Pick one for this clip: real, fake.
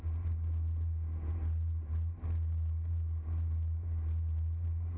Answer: real